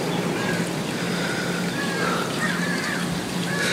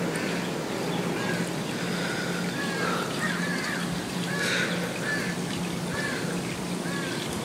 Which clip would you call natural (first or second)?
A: second